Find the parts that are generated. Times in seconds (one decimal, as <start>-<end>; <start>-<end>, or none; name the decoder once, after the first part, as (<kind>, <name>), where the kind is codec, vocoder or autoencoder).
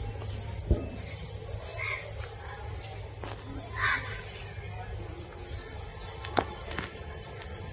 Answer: none